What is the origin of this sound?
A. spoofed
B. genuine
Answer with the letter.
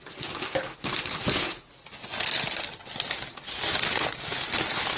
B